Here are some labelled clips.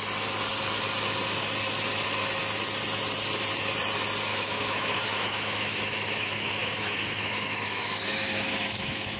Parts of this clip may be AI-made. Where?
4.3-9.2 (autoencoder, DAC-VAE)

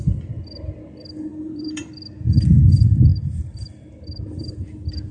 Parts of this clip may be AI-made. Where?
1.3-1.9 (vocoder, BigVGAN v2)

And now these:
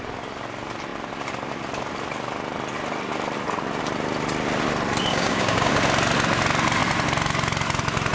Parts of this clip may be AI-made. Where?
5.1-5.7 (codec, DAC)

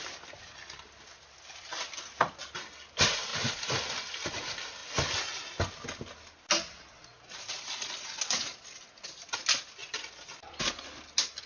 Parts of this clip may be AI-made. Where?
none

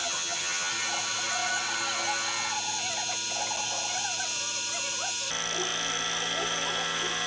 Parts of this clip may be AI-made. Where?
0.0-0.7 (vocoder, HiFi-GAN)

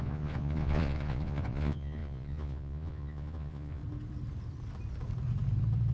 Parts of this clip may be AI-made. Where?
0.0-3.8 (vocoder, Vocos)